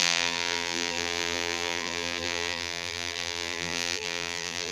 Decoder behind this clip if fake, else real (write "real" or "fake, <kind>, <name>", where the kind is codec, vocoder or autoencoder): fake, vocoder, BigVGAN v2